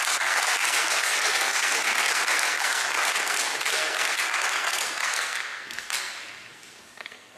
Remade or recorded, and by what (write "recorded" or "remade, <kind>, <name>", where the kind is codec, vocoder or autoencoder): remade, codec, SNAC